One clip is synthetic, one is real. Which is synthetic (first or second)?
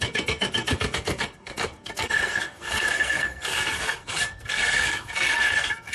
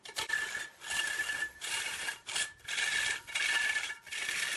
first